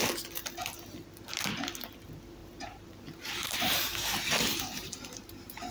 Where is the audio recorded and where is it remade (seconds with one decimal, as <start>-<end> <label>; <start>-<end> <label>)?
0.0-2.4 recorded; 2.4-5.7 remade